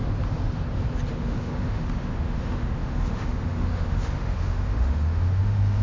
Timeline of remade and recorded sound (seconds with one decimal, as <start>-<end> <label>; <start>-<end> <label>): 0.0-1.1 recorded; 1.1-5.8 remade